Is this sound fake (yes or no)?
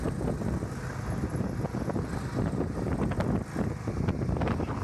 no